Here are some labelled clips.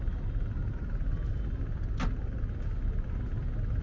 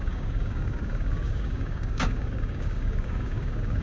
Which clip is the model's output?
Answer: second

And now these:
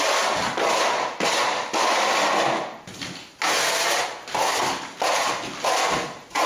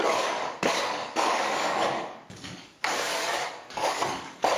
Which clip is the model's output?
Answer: second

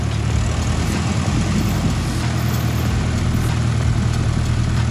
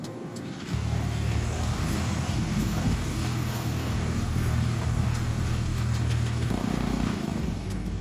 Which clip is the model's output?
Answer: second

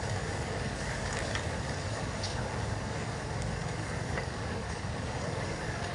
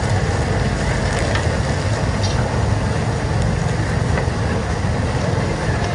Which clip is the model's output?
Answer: first